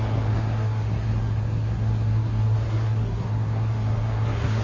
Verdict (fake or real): fake